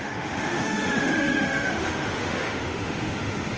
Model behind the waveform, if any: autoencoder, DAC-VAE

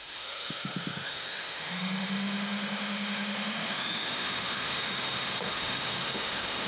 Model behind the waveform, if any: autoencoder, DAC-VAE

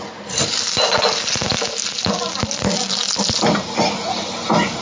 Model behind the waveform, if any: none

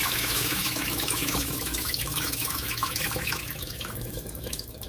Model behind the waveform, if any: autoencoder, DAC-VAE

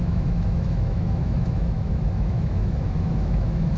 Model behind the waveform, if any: autoencoder, DAC-VAE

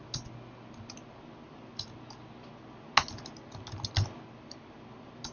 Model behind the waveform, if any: none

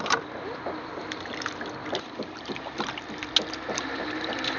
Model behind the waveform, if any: none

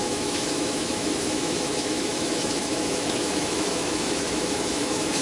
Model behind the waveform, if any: autoencoder, DAC-VAE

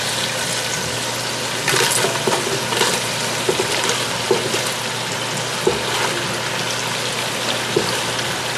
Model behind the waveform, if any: none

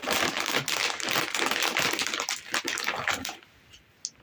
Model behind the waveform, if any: none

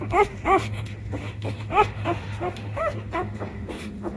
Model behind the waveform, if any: autoencoder, DAC-VAE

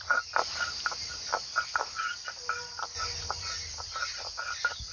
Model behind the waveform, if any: none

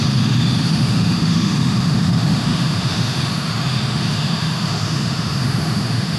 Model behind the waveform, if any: autoencoder, DAC-VAE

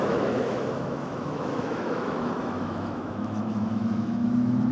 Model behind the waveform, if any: autoencoder, DAC-VAE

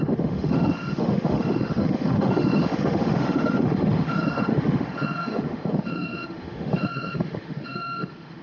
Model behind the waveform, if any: autoencoder, DAC-VAE